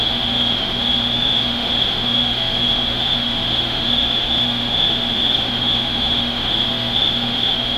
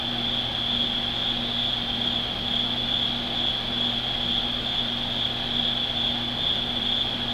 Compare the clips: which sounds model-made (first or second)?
first